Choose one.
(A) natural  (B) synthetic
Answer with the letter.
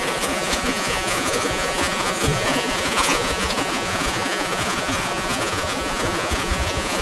B